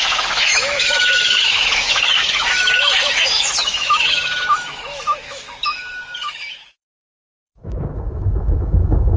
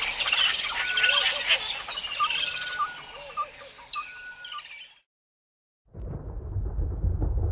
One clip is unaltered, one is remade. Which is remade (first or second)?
first